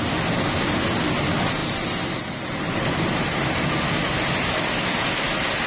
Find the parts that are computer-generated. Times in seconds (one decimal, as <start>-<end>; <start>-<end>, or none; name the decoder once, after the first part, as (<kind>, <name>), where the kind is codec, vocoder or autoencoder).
none